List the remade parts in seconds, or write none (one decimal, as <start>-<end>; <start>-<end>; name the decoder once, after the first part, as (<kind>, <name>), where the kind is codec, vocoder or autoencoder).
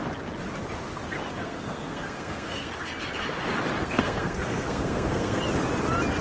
1.4-2.7 (codec, SNAC); 3.8-5.4